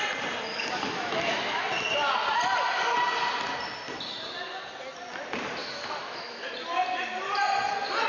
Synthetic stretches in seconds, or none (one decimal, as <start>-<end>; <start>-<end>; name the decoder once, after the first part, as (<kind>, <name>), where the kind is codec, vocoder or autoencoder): 0.5-1.6 (autoencoder, DAC-VAE); 5.6-6.5